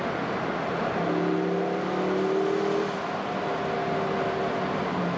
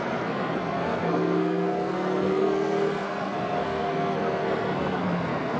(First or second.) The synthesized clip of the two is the second